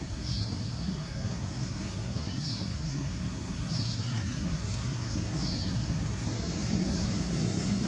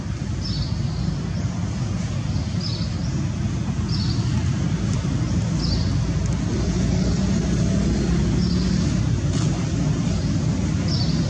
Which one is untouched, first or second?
second